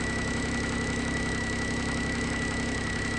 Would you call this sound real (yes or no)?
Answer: no